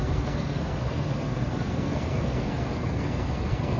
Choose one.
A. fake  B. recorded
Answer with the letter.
A